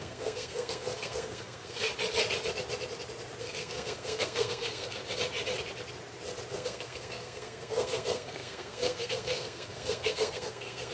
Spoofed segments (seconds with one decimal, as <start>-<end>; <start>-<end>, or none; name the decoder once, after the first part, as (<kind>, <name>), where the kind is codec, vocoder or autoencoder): 0.0-1.9 (codec, SNAC); 3.4-5.0; 6.5-10.9